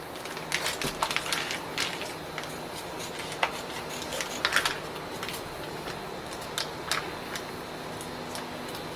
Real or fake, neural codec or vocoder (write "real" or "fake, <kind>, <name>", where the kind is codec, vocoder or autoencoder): real